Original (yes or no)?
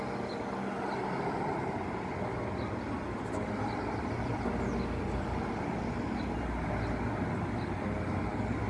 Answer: yes